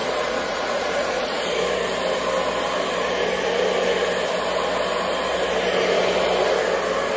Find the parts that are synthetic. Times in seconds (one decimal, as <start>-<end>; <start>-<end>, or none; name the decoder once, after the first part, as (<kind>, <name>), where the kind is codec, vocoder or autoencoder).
0.0-1.4 (vocoder, Vocos)